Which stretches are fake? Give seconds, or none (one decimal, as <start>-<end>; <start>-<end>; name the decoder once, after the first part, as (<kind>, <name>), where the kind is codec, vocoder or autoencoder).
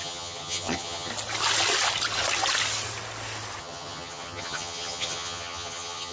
0.0-1.1 (vocoder, HiFi-GAN); 3.6-6.1